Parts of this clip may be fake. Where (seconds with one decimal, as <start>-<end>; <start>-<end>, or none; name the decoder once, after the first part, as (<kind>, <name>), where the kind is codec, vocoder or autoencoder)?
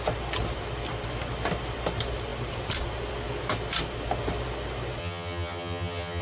5.0-6.2 (vocoder, HiFi-GAN)